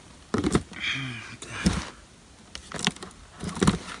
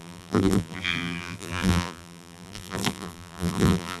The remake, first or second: second